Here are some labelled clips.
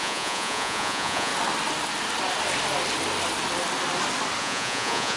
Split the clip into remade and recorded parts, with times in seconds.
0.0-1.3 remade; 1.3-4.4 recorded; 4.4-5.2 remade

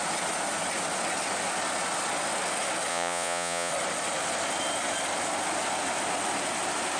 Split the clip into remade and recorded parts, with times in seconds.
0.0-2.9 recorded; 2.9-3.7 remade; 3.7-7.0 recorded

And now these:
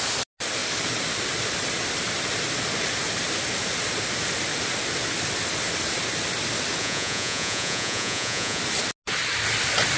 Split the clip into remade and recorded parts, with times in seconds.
0.0-6.8 recorded; 6.8-8.6 remade; 8.6-10.0 recorded

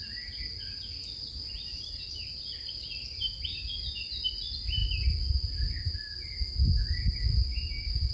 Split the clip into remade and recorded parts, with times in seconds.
0.0-8.1 recorded

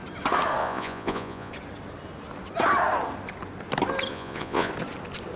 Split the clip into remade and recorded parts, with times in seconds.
0.0-0.6 recorded; 0.6-1.5 remade; 1.5-4.1 recorded; 4.1-4.7 remade; 4.7-5.4 recorded

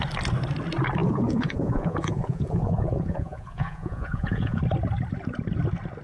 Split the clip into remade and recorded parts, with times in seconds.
0.0-1.0 recorded; 1.0-4.6 remade; 4.6-6.0 recorded